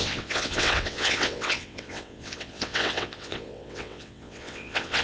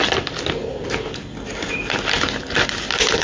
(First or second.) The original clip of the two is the second